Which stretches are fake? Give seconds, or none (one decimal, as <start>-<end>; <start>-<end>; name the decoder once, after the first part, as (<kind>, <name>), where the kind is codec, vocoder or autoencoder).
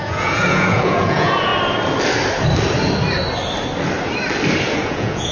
0.0-1.5 (vocoder, Vocos); 4.7-5.3